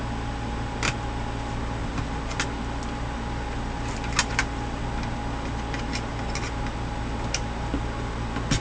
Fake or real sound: real